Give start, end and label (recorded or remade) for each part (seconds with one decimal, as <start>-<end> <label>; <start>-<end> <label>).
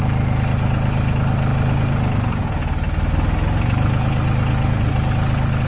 0.0-1.5 recorded; 1.5-2.4 remade; 2.4-5.7 recorded